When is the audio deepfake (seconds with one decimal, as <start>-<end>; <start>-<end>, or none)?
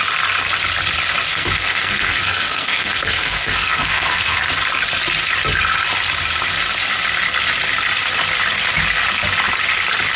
1.3-4.5